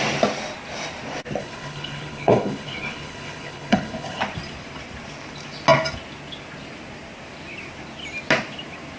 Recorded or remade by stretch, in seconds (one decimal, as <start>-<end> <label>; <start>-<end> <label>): 0.0-1.4 recorded; 1.4-4.2 remade; 4.2-9.0 recorded